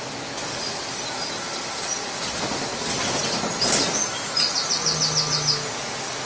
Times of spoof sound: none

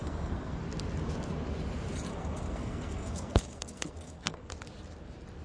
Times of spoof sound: 0.0-0.6 (codec, SNAC); 2.1-4.5

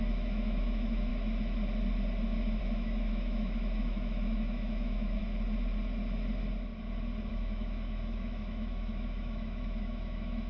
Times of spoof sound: 0.0-1.1 (autoencoder, DAC-VAE); 2.6-5.2; 7.3-10.5

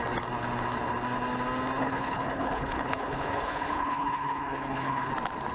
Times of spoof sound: 1.8-5.1 (codec, HILCodec)

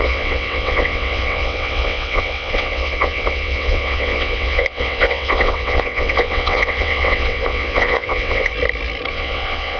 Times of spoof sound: 0.0-8.5 (vocoder, WaveNeXt); 9.1-9.8

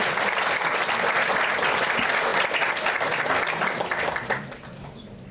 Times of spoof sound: none

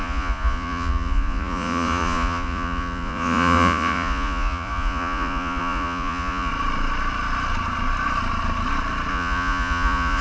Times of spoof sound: 0.0-6.5 (vocoder, Vocos); 9.1-10.2

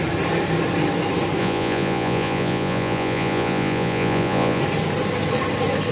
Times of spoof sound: 1.4-4.6 (vocoder, Vocos)